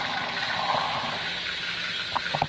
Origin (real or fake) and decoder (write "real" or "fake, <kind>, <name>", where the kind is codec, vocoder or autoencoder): real